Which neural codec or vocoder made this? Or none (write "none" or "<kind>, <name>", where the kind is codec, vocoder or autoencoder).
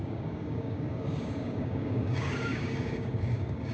codec, DAC